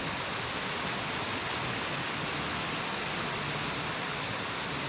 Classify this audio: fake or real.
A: real